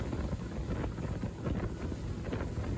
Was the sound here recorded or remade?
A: recorded